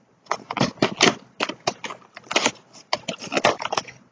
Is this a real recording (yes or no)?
yes